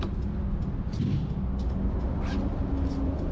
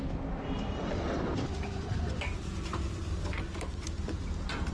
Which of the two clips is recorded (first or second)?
first